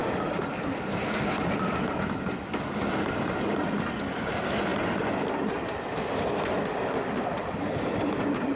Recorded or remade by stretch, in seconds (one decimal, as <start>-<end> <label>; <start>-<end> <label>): 0.0-8.6 recorded